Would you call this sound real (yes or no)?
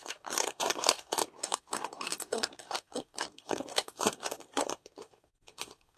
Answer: no